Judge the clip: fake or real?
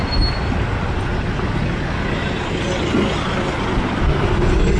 real